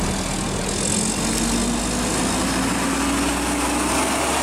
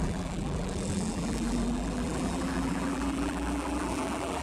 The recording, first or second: first